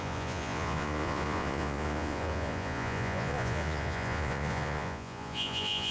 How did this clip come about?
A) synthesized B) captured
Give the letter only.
A